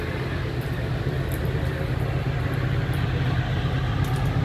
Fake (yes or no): no